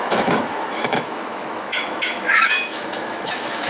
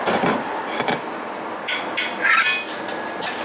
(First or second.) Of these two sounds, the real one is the second